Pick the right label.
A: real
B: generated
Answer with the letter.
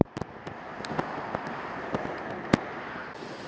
A